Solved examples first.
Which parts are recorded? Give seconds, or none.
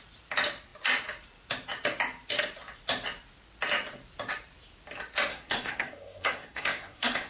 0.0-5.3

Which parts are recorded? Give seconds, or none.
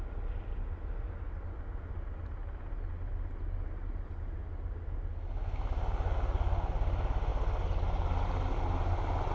0.0-9.3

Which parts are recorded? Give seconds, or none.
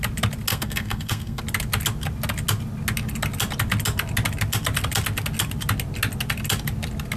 0.0-0.5; 1.4-7.2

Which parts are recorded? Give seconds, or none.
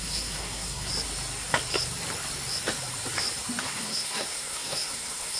0.9-3.6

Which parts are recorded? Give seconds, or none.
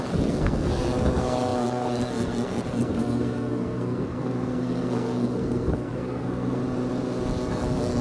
6.6-7.5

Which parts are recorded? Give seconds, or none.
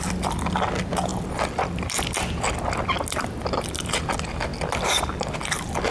0.0-5.9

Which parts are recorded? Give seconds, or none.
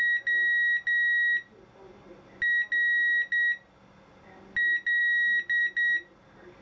0.0-6.6